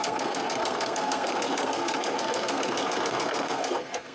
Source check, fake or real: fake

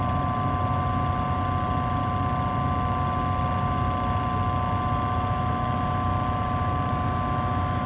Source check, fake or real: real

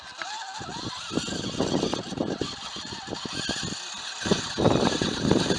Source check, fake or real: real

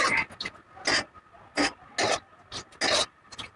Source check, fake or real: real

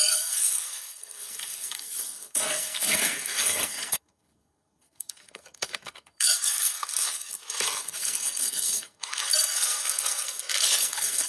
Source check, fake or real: fake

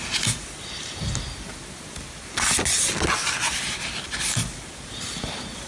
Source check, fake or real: real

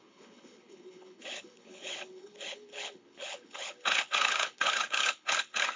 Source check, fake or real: fake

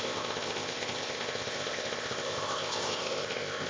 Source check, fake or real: fake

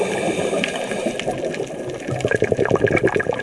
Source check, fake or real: real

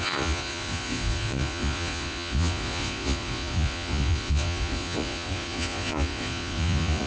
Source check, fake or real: fake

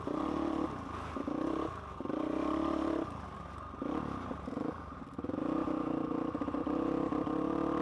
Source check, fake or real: real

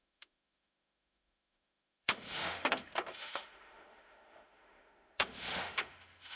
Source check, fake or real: fake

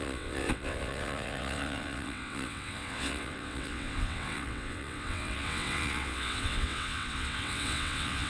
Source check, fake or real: fake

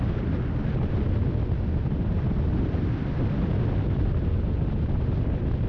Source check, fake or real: real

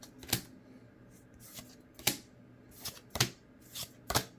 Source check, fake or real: real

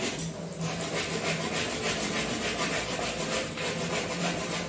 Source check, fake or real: real